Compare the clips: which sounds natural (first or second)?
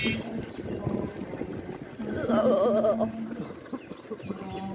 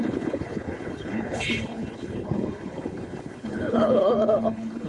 first